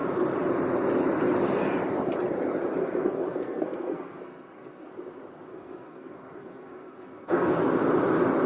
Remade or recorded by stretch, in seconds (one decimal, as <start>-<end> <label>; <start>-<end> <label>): 0.0-2.8 recorded; 2.8-4.9 remade; 4.9-5.5 recorded; 5.5-7.6 remade; 7.6-8.5 recorded